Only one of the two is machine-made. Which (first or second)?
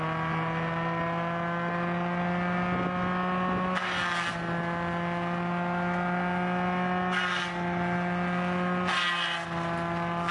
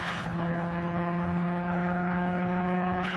second